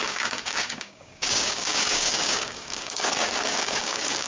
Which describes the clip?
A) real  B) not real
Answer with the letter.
B